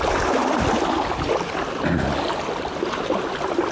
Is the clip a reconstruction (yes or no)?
no